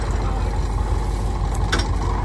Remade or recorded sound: recorded